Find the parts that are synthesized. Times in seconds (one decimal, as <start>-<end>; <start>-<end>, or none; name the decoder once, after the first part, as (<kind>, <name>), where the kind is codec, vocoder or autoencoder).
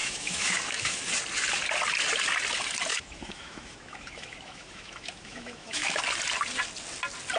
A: 0.0-1.0 (autoencoder, DAC-VAE); 2.9-6.0